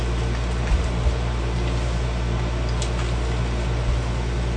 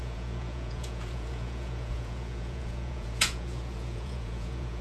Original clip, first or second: first